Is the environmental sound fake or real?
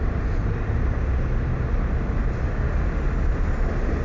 real